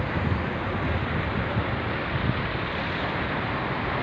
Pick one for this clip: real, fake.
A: real